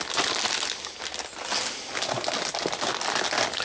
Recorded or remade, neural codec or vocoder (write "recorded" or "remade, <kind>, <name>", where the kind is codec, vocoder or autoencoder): recorded